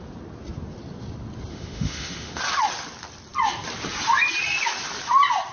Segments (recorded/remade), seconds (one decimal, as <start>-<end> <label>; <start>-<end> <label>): 0.0-1.5 recorded; 1.5-2.4 remade; 2.4-5.5 recorded